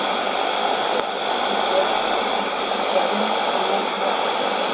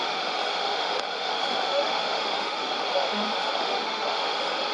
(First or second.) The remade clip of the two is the second